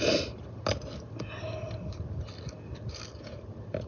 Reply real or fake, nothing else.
real